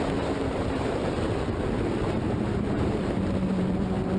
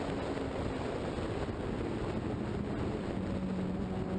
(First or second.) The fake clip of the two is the first